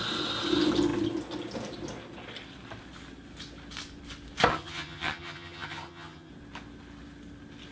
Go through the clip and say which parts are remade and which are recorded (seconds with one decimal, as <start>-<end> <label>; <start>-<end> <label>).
0.0-4.5 recorded; 4.5-6.3 remade; 6.3-7.7 recorded